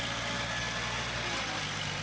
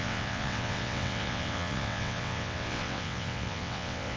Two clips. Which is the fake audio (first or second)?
second